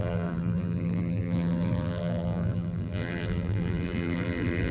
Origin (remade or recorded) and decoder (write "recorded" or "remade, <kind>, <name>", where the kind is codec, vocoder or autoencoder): remade, vocoder, BigVGAN v2